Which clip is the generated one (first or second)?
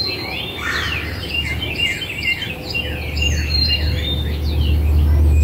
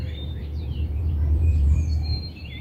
second